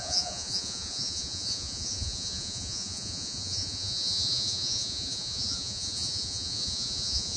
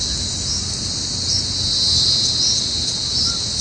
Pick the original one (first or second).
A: second